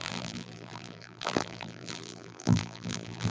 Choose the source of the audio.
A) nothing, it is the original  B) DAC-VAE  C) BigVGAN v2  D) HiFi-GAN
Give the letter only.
C